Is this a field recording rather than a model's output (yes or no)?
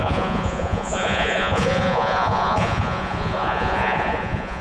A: no